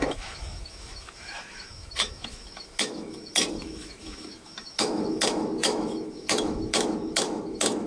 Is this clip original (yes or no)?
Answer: no